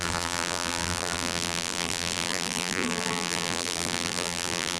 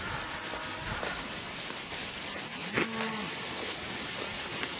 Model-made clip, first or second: first